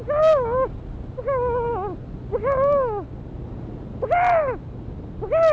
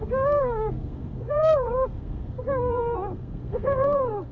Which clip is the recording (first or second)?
first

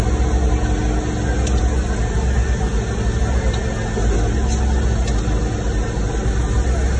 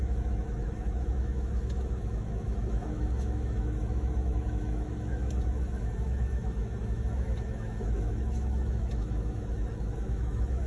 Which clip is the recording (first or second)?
first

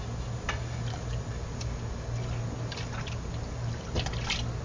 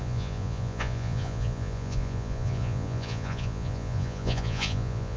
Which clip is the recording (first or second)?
first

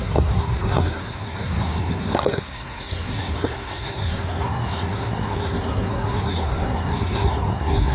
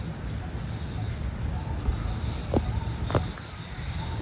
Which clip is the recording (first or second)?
second